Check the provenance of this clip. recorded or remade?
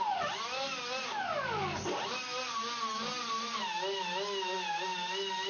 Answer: recorded